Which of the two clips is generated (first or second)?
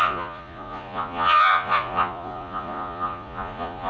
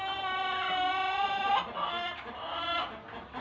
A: first